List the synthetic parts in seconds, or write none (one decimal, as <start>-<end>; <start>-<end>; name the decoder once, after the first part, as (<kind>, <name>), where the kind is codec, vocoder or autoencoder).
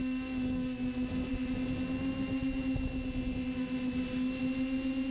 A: none